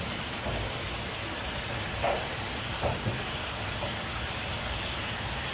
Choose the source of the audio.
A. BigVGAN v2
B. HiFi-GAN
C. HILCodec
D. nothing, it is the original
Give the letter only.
D